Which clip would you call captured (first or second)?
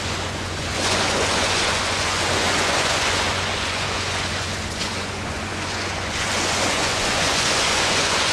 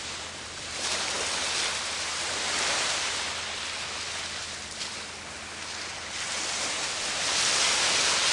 second